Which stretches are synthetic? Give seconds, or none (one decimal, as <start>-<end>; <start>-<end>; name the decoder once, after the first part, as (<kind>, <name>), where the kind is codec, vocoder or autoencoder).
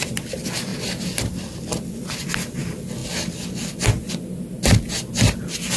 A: none